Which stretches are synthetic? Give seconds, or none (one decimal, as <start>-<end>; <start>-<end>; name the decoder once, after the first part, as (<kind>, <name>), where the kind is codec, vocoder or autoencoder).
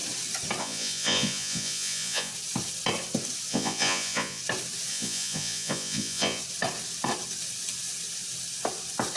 0.6-2.3 (vocoder, Vocos); 3.5-4.4; 4.9-6.4